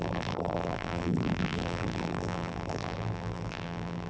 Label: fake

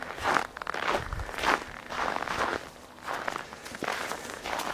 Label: real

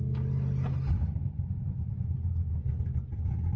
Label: real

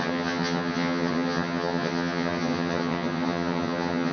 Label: fake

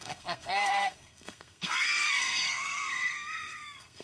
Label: fake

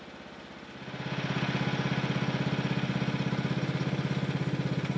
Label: real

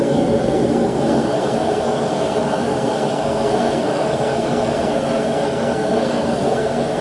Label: fake